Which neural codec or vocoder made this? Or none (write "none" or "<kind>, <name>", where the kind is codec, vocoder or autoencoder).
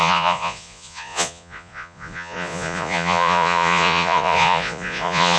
vocoder, Vocos